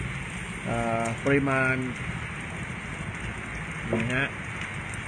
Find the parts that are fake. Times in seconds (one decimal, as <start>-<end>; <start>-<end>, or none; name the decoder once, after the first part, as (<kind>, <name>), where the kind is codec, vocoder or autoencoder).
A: none